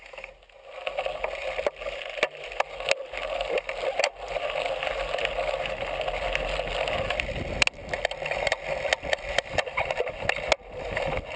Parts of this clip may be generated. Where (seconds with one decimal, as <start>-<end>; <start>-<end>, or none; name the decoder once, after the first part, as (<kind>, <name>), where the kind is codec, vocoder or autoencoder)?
none